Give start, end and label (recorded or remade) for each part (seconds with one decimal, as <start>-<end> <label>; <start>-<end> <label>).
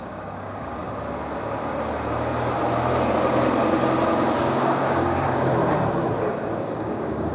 0.0-0.8 remade; 0.8-4.4 recorded; 4.4-5.5 remade; 5.5-6.3 recorded; 6.3-7.3 remade